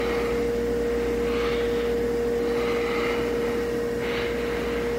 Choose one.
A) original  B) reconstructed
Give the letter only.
A